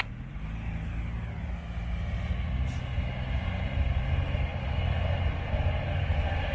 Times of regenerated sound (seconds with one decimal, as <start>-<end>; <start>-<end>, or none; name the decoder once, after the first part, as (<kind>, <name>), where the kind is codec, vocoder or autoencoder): none